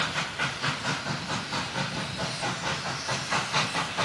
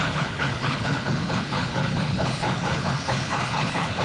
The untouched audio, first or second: first